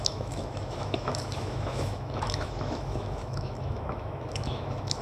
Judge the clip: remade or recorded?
remade